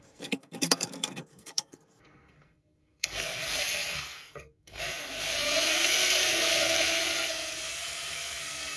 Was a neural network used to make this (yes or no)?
yes